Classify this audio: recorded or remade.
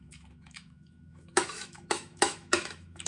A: remade